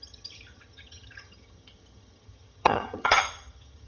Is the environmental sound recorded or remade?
remade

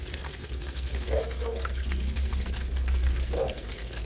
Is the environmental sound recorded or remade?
remade